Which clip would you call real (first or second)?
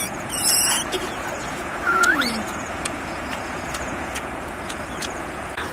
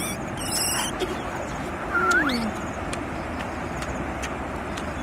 second